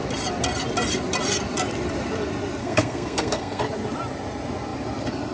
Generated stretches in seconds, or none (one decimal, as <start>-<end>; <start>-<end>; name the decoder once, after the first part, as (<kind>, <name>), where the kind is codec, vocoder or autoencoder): 2.6-3.6 (codec, SNAC)